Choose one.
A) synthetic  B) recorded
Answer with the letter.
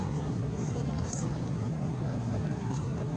A